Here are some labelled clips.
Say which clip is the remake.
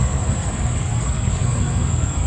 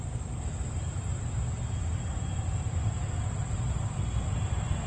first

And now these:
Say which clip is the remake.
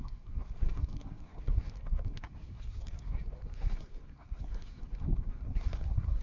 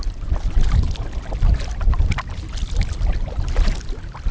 first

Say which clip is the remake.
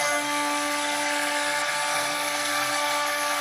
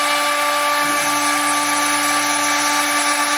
first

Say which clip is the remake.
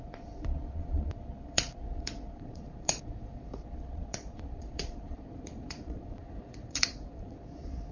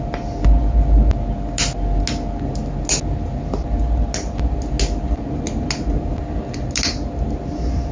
first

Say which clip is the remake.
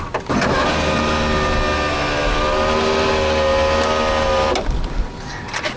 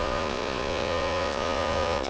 second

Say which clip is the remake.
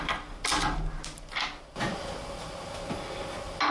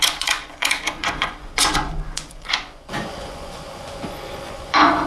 second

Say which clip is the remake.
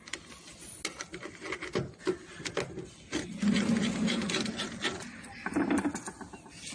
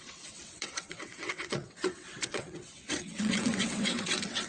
second